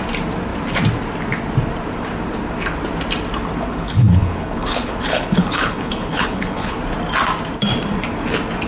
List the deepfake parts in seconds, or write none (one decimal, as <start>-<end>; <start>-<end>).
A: 3.7-6.8